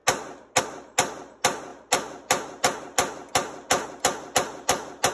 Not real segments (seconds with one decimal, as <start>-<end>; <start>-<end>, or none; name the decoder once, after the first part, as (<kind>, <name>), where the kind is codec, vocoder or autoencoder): none